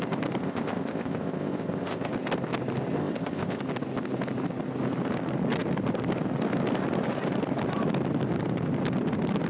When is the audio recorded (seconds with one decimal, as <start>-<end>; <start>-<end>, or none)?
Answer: 0.0-0.4; 2.1-3.0; 3.6-9.5